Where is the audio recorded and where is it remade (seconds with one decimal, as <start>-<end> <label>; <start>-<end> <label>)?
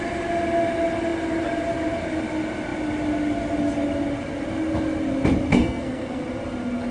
0.0-5.5 recorded; 5.5-6.2 remade; 6.2-6.9 recorded